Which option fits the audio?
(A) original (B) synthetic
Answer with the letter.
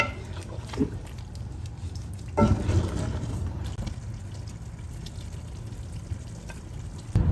A